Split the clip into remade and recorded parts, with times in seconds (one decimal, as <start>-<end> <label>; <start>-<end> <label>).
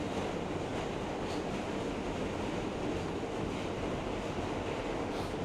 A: 0.0-5.4 recorded